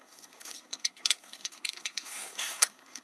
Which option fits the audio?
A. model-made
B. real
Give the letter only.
A